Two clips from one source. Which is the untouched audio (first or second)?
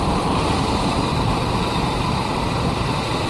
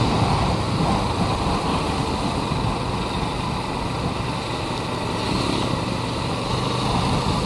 second